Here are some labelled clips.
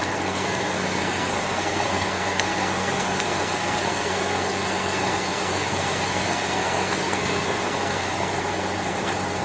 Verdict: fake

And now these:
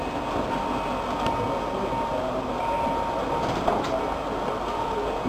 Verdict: real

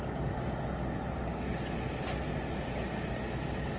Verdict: real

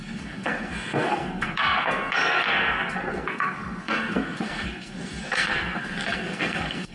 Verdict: fake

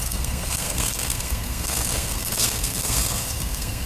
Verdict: fake